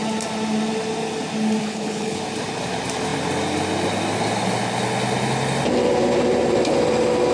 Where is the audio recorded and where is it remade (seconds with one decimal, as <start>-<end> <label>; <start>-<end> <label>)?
0.0-1.6 recorded; 1.6-2.2 remade; 2.2-7.3 recorded